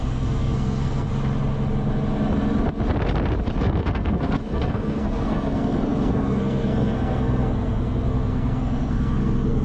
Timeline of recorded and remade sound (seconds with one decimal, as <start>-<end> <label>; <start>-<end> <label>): 0.0-1.1 remade; 1.1-3.6 recorded; 3.6-9.6 remade